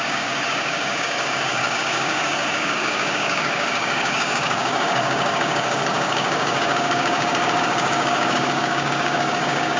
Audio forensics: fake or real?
fake